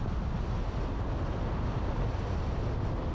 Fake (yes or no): no